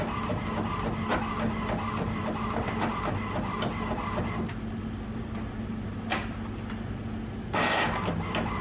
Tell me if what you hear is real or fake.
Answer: real